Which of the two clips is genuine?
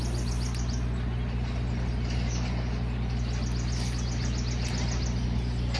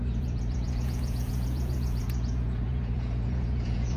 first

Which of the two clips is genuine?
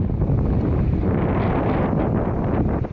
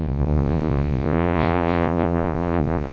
first